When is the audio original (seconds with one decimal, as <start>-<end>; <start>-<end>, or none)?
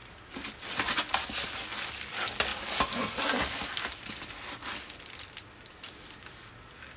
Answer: 0.0-7.0